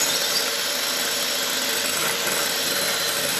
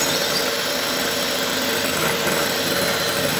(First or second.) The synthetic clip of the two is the first